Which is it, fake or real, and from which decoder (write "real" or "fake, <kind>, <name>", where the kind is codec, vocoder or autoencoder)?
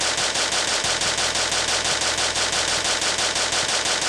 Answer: real